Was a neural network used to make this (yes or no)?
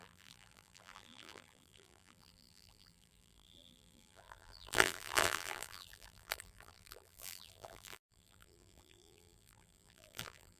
yes